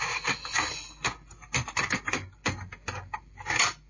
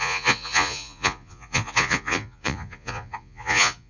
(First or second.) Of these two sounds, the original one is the first